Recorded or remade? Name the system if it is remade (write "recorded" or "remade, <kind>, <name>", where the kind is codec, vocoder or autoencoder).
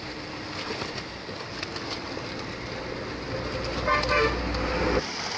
recorded